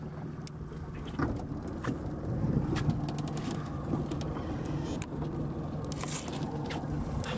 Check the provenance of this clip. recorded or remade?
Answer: recorded